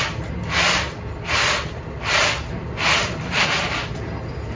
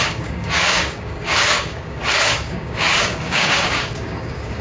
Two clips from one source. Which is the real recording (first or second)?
first